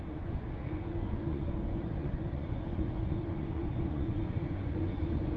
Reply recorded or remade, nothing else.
remade